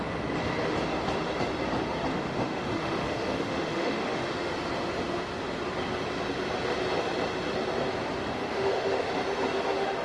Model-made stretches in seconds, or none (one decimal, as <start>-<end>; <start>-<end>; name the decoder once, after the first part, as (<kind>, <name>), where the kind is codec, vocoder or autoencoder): 2.1-4.5 (autoencoder, DAC-VAE); 8.3-9.1